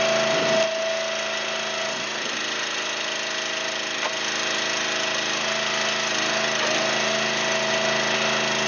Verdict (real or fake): real